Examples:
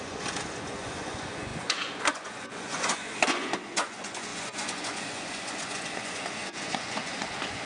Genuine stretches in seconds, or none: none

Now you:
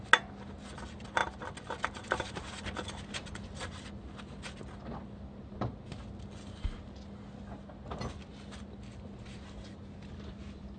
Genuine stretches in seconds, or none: 0.0-10.8

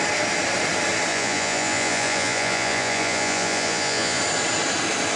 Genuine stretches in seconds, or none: 0.0-1.1; 4.2-5.2

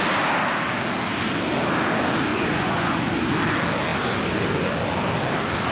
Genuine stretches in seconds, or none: 0.0-2.3; 3.0-5.7

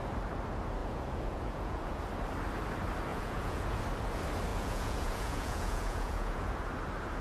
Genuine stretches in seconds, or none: 0.0-0.8; 2.0-3.1; 3.8-4.5; 6.5-7.2

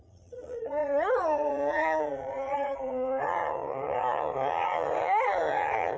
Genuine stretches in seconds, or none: none

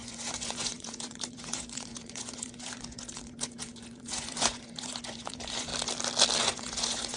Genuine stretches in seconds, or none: 5.7-6.4